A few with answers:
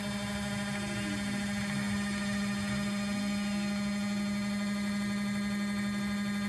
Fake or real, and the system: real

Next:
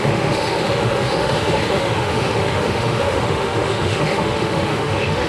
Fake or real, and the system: fake, autoencoder, DAC-VAE